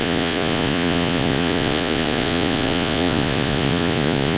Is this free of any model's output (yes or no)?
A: no